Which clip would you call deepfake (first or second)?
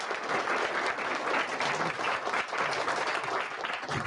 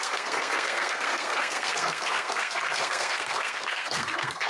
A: second